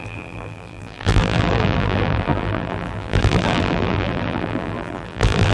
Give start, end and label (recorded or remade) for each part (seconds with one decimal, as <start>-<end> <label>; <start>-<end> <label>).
0.0-5.5 remade